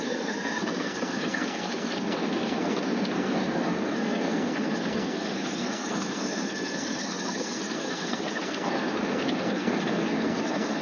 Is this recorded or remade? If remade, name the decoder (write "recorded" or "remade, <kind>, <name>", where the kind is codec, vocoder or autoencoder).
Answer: remade, codec, SNAC